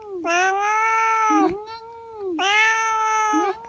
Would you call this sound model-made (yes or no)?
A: no